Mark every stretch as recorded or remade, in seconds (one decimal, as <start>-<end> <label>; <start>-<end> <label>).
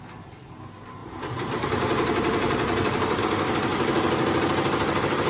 0.0-1.0 recorded; 1.0-3.2 remade; 3.2-3.7 recorded; 3.7-5.3 remade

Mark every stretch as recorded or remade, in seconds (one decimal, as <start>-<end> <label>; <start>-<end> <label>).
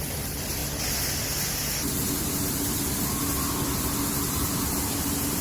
0.0-5.4 recorded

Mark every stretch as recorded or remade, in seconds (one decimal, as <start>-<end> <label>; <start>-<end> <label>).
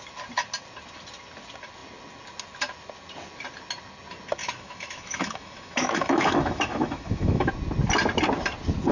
0.0-4.4 recorded; 4.4-7.5 remade; 7.5-8.9 recorded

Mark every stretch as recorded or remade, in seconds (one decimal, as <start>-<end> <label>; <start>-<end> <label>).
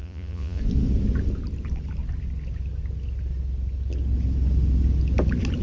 0.0-0.6 remade; 0.6-5.6 recorded